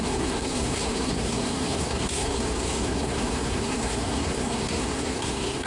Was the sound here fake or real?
fake